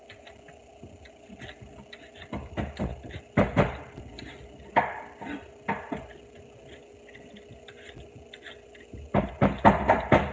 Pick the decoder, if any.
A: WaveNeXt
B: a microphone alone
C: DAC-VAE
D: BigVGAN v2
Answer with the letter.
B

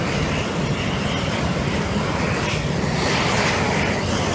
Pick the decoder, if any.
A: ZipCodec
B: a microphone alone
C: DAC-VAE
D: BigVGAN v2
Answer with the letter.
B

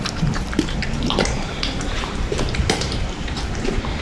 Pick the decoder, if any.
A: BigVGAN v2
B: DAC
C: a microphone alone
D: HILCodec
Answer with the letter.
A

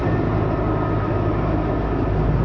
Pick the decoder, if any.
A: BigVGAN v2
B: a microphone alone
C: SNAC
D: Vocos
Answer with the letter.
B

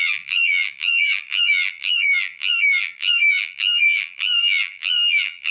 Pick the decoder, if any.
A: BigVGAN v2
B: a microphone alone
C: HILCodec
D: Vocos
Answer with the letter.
A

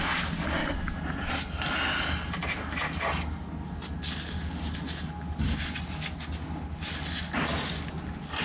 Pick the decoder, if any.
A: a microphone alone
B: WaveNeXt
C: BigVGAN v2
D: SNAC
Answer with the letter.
A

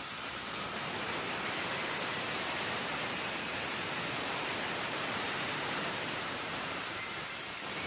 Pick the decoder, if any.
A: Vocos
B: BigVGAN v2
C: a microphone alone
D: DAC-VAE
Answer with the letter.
B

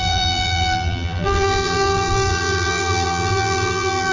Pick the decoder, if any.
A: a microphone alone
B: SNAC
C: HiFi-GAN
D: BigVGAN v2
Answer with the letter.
D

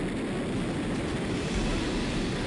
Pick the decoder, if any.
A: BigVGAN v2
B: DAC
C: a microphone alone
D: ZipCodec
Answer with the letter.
A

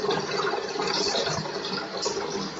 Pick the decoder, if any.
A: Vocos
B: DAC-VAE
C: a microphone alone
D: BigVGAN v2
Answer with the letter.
C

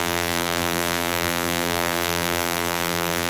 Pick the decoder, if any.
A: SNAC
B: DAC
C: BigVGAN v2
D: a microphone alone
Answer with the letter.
C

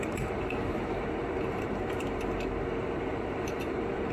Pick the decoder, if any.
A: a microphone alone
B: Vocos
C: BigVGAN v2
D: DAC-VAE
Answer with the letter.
C